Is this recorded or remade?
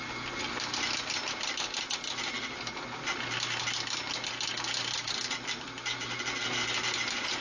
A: recorded